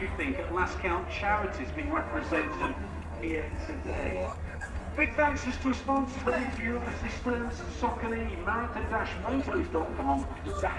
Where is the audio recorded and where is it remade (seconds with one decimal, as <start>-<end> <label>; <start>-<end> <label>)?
0.0-1.8 recorded; 1.8-7.3 remade; 7.3-9.4 recorded; 9.4-10.8 remade